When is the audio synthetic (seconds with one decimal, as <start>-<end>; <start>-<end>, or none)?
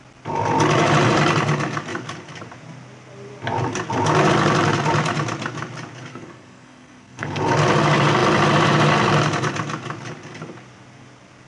6.1-7.4